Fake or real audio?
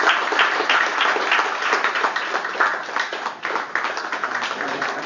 real